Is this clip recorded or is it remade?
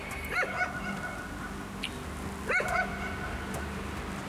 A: recorded